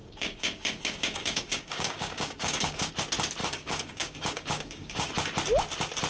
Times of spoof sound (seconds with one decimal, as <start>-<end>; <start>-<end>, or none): 0.0-2.9; 3.4-5.1